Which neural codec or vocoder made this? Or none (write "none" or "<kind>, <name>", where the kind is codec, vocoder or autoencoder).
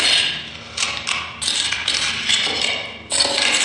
none